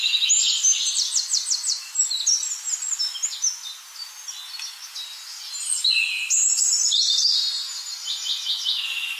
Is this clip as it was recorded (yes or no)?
yes